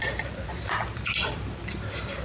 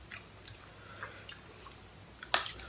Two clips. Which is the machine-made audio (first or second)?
first